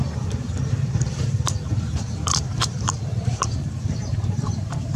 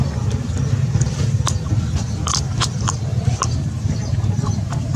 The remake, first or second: first